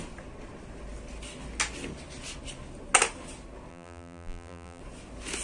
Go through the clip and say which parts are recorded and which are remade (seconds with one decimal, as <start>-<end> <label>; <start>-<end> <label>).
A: 0.0-3.7 recorded; 3.7-4.8 remade; 4.8-5.4 recorded